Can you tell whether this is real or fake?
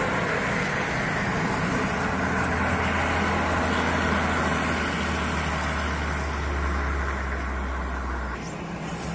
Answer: real